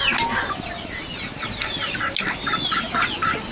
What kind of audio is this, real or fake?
real